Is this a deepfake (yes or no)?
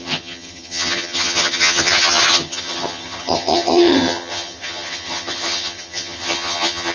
yes